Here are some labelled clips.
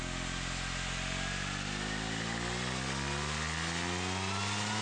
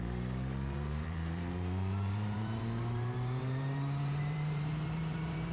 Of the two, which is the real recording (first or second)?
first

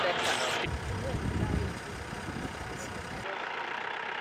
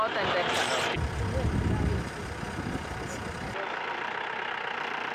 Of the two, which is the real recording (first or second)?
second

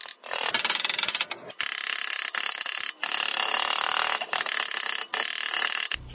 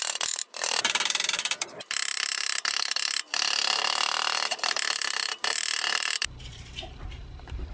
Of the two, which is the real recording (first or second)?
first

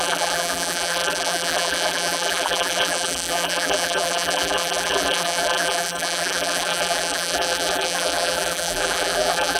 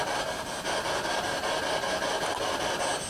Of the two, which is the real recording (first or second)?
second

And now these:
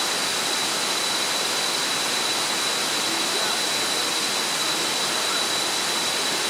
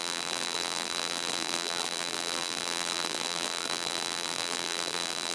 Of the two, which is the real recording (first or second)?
first